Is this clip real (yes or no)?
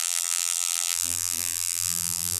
no